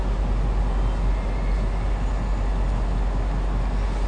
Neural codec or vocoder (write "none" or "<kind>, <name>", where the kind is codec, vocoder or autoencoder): none